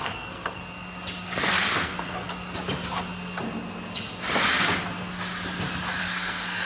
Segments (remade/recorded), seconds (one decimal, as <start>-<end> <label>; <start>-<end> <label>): 0.0-0.6 remade; 0.6-1.2 recorded; 1.2-2.3 remade; 2.3-6.0 recorded; 6.0-6.7 remade